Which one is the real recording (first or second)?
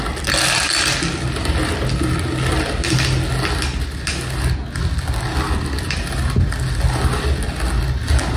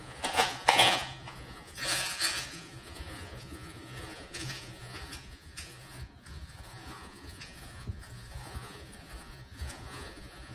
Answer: first